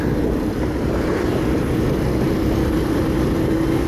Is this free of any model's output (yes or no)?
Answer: yes